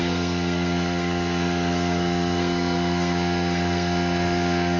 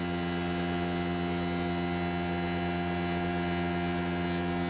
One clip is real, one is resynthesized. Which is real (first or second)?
second